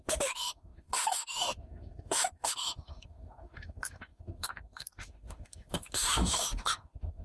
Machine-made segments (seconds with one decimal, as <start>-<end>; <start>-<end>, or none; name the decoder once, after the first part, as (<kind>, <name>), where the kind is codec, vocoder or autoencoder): 0.0-7.2 (autoencoder, DAC-VAE)